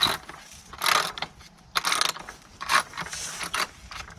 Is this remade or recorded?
recorded